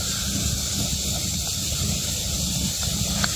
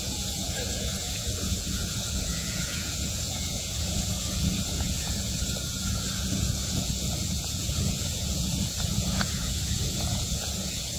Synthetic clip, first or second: second